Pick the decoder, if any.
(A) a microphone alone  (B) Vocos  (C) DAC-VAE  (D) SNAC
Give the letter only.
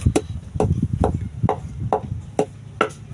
A